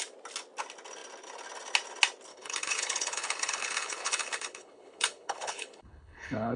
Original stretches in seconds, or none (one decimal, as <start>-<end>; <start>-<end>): 0.0-2.3